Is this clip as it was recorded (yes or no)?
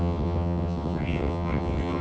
no